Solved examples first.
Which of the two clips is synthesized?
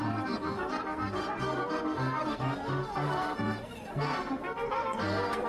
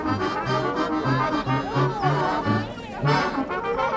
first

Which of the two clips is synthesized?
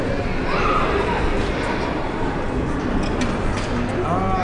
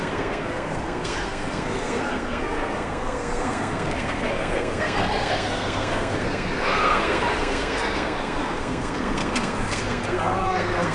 second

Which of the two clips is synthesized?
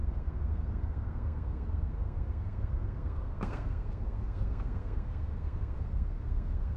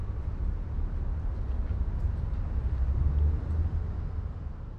first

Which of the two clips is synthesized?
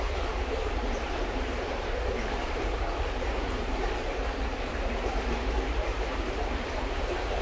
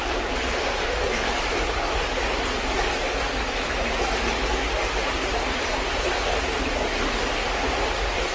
first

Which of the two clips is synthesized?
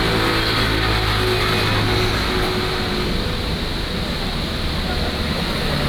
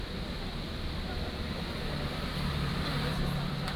second